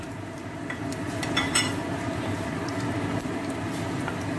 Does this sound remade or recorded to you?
remade